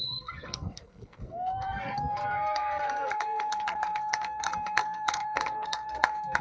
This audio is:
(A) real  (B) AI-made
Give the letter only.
B